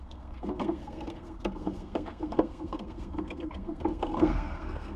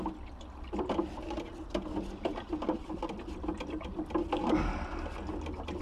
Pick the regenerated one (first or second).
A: first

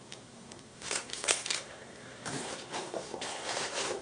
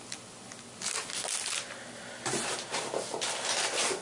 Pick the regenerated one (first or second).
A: first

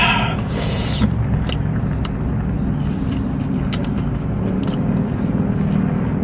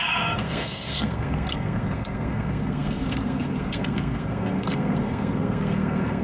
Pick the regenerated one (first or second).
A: second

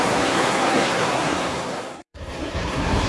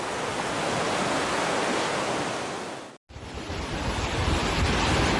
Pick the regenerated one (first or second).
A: first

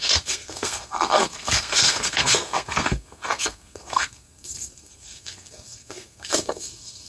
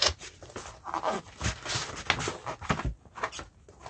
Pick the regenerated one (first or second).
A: first